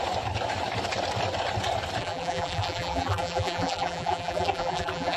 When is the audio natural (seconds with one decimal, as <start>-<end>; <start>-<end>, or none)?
0.0-2.0